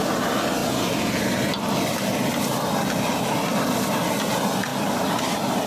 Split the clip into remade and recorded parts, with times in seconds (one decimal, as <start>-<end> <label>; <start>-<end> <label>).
0.0-4.7 recorded; 4.7-5.2 remade; 5.2-5.7 recorded